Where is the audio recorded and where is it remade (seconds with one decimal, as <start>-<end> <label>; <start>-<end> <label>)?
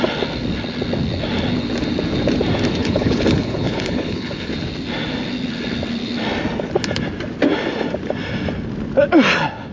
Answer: 0.0-2.8 recorded; 2.8-4.5 remade; 4.5-9.7 recorded